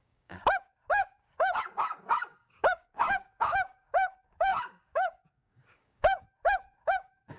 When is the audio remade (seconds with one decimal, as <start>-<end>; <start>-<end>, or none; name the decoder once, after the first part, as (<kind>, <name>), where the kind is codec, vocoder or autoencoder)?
0.0-7.4 (codec, DAC)